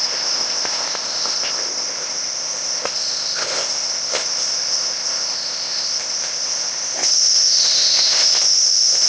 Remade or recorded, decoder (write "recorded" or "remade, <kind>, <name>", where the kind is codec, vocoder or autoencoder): remade, codec, ZipCodec